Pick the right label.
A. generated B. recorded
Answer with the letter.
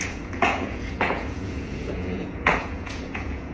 A